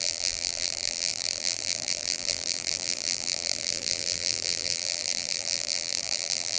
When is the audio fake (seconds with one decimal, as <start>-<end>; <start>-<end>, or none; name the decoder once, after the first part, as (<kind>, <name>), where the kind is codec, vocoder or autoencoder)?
0.0-6.6 (vocoder, BigVGAN v2)